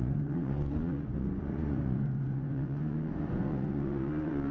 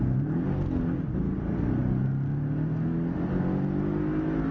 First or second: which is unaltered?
second